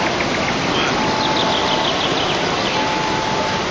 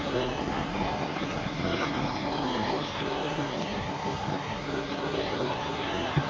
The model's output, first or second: second